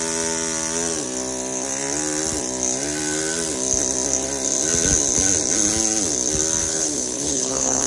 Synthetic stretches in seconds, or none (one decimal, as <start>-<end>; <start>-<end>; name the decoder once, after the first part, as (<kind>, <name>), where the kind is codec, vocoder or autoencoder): 6.6-7.9 (codec, HILCodec)